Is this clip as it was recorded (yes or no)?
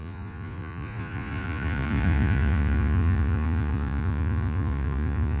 no